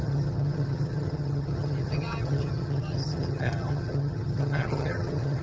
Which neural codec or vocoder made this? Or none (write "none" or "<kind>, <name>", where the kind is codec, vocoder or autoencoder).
vocoder, HiFi-GAN